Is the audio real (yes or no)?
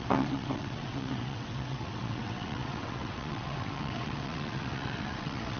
no